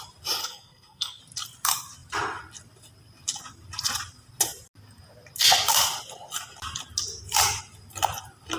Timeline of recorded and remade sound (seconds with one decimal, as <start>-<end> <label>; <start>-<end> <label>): 0.0-0.4 recorded; 0.4-1.2 remade; 1.2-8.6 recorded